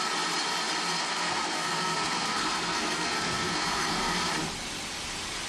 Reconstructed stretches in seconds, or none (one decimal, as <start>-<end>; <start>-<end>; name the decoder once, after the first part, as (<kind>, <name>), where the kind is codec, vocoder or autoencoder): 1.0-4.3 (codec, SNAC)